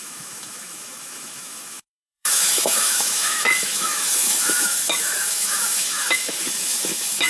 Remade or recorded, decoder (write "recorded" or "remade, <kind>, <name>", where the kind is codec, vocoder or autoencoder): remade, autoencoder, DAC-VAE